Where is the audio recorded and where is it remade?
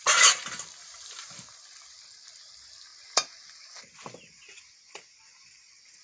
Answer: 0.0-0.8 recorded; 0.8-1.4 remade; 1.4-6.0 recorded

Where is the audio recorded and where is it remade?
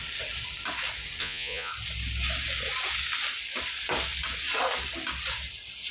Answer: 0.0-1.2 recorded; 1.2-1.7 remade; 1.7-5.9 recorded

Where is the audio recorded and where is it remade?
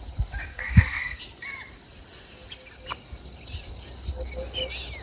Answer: 0.0-0.5 recorded; 0.5-1.2 remade; 1.2-5.0 recorded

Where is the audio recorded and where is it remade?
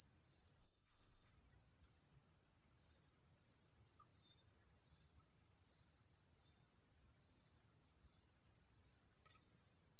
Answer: 0.0-0.6 recorded; 0.6-1.3 remade; 1.3-10.0 recorded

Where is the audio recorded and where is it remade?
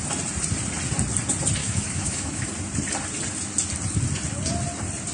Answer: 0.0-1.6 recorded; 1.6-2.5 remade; 2.5-5.1 recorded